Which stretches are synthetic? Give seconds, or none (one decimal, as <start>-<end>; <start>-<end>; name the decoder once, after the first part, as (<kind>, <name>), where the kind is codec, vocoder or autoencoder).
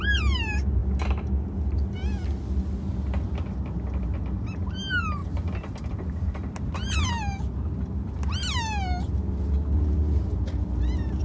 none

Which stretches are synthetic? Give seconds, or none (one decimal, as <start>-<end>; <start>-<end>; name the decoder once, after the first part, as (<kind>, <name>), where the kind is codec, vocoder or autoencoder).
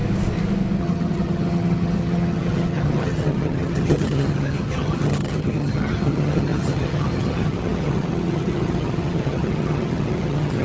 0.8-10.6 (vocoder, HiFi-GAN)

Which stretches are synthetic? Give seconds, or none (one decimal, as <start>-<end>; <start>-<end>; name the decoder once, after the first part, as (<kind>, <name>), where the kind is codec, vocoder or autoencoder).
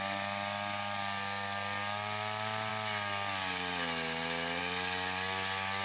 none